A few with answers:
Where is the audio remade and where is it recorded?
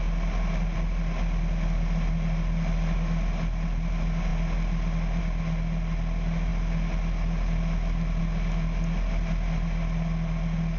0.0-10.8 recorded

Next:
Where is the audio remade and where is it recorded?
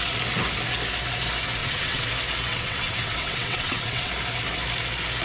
0.0-1.6 recorded; 1.6-2.1 remade; 2.1-2.5 recorded; 2.5-4.1 remade; 4.1-5.2 recorded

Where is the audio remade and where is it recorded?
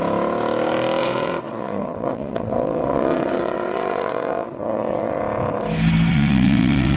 0.0-1.0 recorded; 1.0-5.2 remade; 5.2-6.1 recorded; 6.1-7.0 remade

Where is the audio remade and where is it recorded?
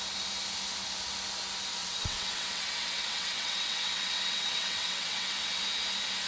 0.0-1.8 recorded; 1.8-5.6 remade; 5.6-6.3 recorded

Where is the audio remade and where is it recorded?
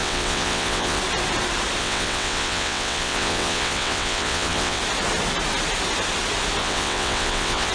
0.0-1.0 remade; 1.0-1.8 recorded; 1.8-4.8 remade; 4.8-6.6 recorded; 6.6-7.7 remade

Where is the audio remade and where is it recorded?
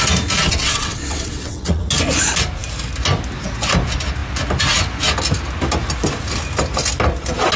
0.0-0.4 recorded; 0.4-1.8 remade; 1.8-7.6 recorded